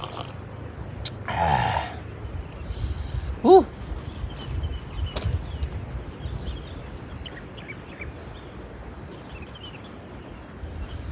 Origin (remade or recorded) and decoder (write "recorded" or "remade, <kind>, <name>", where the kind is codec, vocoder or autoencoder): recorded